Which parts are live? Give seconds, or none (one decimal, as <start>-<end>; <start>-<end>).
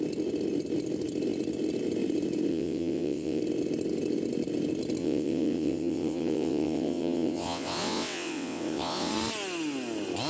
0.0-2.5; 3.4-5.0; 9.1-10.3